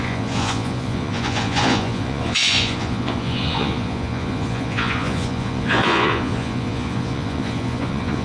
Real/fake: fake